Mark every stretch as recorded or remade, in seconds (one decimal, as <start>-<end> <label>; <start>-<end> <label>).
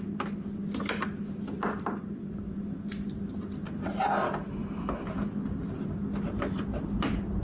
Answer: 0.0-7.4 recorded